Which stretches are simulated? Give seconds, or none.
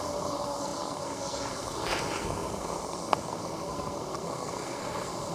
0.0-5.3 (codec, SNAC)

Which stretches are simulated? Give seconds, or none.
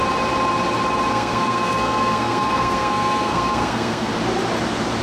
1.1-4.1 (codec, SNAC)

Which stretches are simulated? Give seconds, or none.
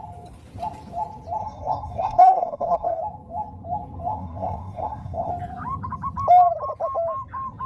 1.4-3.0 (codec, SNAC); 4.1-5.3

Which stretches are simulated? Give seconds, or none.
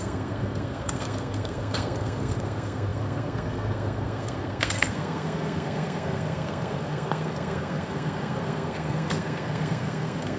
0.0-10.4 (codec, SNAC)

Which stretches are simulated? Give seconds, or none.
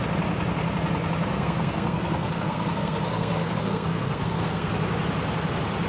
1.2-4.7 (codec, SNAC)